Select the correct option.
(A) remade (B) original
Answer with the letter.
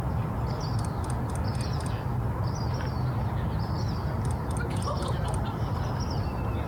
B